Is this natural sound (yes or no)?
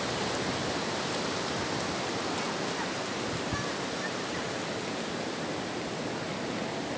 yes